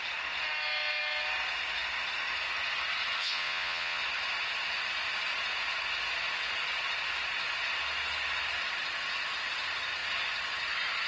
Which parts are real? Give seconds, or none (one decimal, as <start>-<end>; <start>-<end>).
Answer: 0.0-3.2; 4.0-11.1